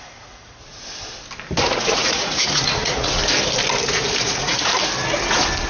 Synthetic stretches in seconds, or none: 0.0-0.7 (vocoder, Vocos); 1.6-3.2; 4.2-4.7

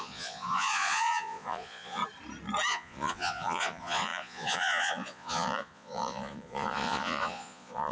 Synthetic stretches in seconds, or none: 0.0-2.0 (vocoder, Vocos); 2.7-7.9

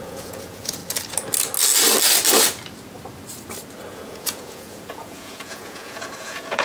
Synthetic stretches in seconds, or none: 0.0-0.8 (vocoder, Vocos); 3.9-6.6

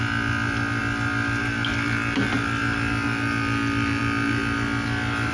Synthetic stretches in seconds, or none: none

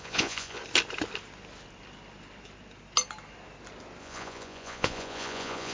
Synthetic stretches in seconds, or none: 0.0-0.6 (vocoder, Vocos); 4.0-5.7

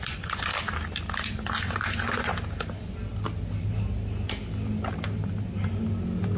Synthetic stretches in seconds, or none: 0.0-0.5 (vocoder, Vocos); 1.3-2.3

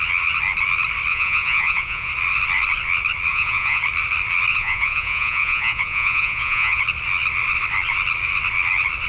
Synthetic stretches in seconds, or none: 1.1-2.1 (vocoder, Vocos); 3.3-3.8; 4.5-6.8

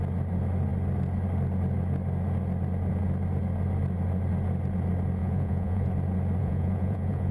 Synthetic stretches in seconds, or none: 5.2-5.9 (vocoder, Vocos); 6.4-7.3